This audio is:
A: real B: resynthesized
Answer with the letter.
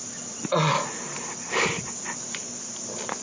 A